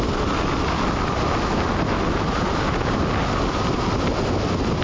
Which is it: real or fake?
real